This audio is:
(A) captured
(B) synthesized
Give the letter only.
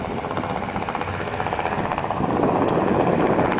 A